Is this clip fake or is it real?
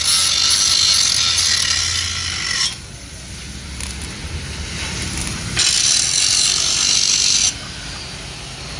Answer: real